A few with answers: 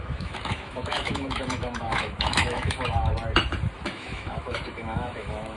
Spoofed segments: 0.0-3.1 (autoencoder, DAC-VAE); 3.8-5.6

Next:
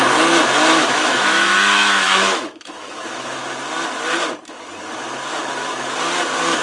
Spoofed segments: 0.8-3.4 (autoencoder, DAC-VAE)

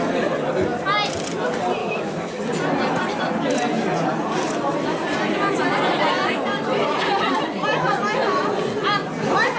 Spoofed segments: 1.8-2.4 (autoencoder, DAC-VAE)

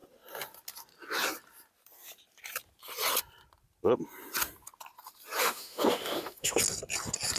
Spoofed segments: 5.4-6.6 (autoencoder, DAC-VAE)

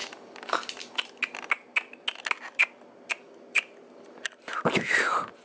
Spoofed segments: none

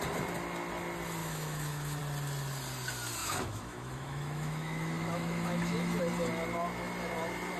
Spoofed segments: 1.2-2.0 (autoencoder, DAC-VAE); 3.2-6.0